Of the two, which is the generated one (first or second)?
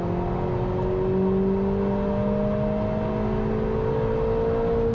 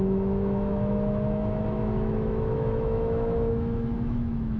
second